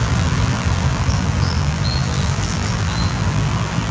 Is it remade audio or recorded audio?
remade